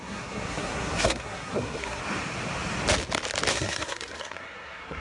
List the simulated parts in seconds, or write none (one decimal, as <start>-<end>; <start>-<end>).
0.0-2.0; 3.5-5.0